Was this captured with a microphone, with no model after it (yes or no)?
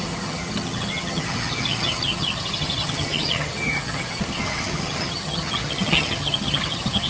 no